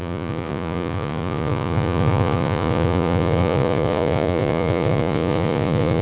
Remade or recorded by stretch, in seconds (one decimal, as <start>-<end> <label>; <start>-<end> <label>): 0.0-6.0 remade